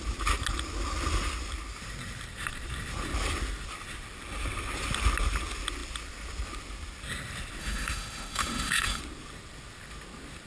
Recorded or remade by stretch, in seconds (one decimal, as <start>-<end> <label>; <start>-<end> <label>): 0.0-7.6 recorded; 7.6-9.0 remade; 9.0-10.5 recorded